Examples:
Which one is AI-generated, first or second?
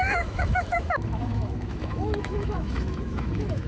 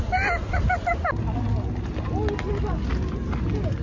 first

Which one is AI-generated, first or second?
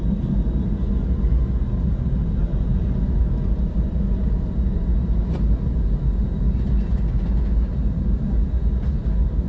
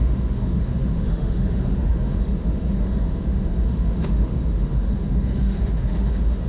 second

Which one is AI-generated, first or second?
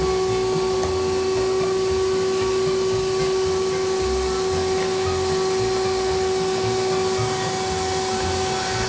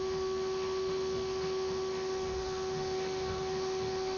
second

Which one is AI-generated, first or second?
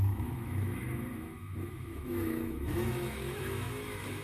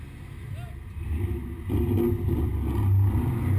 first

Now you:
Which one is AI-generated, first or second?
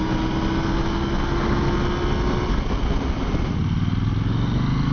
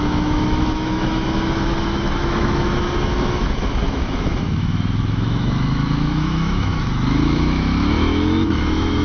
second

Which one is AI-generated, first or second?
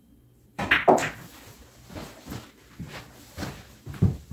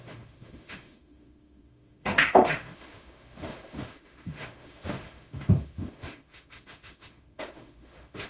second